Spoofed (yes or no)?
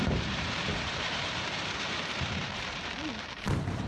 yes